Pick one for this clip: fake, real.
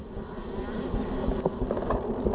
real